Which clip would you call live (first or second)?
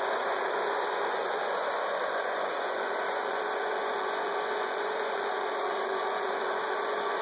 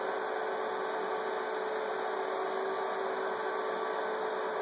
second